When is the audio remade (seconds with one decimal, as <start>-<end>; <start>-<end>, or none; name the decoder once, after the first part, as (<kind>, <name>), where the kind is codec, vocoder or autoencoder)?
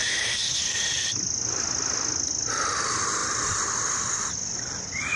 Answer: 0.0-0.9 (vocoder, BigVGAN v2)